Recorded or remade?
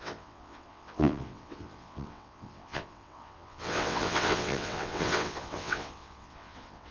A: remade